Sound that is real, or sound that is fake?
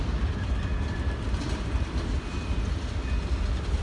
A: real